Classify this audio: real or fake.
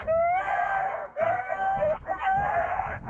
fake